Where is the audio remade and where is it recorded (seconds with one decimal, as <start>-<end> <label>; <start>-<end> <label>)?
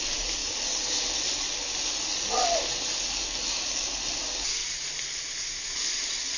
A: 0.0-0.4 recorded; 0.4-1.2 remade; 1.2-4.6 recorded; 4.6-6.0 remade; 6.0-6.4 recorded